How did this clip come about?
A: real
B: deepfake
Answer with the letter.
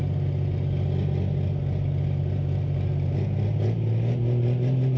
A